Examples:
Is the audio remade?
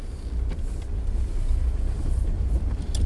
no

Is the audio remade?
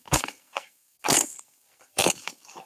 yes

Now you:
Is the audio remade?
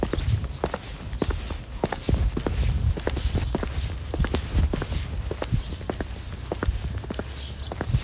no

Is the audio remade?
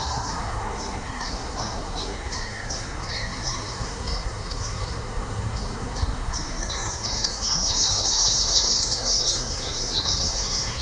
yes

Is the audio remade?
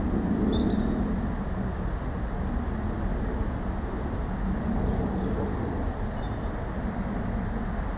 no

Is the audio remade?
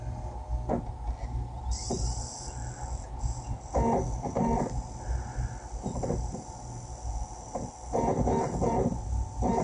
no